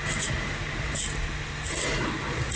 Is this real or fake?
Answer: real